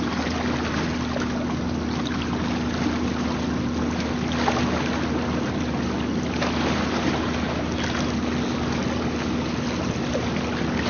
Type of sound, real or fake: real